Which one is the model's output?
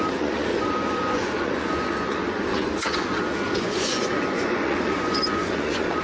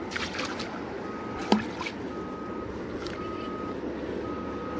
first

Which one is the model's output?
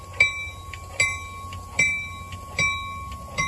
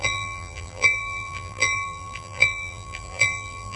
second